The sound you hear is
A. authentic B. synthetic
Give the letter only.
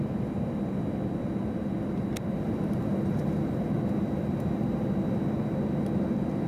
A